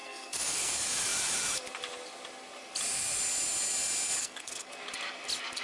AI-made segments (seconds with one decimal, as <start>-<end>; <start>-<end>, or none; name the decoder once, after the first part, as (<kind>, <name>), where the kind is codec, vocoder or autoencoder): 0.0-0.7 (codec, SNAC); 4.2-4.7